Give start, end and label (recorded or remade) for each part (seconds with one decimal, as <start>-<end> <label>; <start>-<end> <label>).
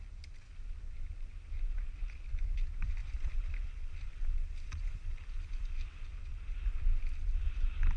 0.0-3.0 recorded; 3.0-5.7 remade; 5.7-8.0 recorded